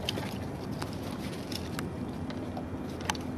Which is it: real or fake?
real